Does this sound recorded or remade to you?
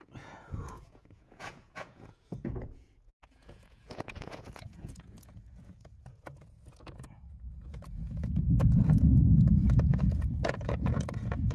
remade